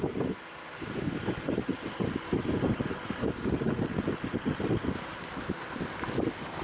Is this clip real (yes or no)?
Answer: yes